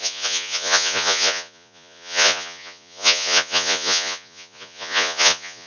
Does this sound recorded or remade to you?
remade